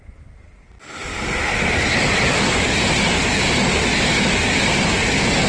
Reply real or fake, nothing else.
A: real